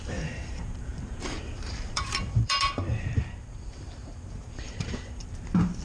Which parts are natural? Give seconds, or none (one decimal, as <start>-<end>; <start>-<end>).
0.9-1.4